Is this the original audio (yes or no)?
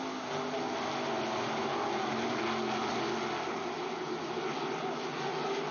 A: yes